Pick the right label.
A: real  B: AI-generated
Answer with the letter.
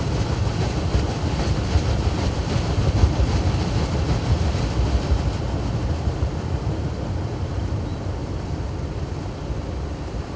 A